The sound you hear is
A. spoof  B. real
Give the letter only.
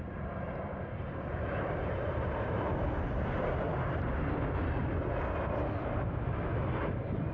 B